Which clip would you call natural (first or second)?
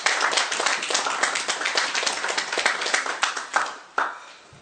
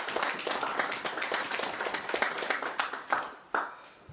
first